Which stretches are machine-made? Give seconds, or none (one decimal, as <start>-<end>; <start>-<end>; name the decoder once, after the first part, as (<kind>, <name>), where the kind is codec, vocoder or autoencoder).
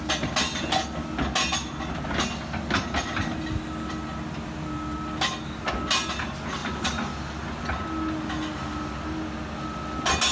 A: none